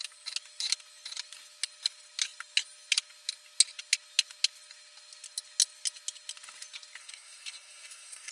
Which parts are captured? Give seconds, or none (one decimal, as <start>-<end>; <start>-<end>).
0.0-7.0